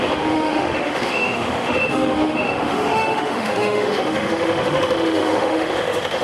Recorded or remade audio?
remade